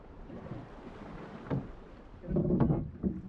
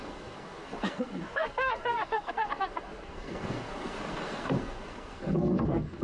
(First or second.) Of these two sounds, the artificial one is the second